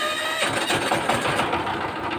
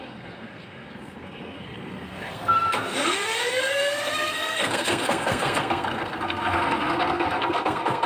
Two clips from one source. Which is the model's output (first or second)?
second